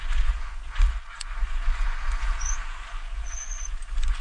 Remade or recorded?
remade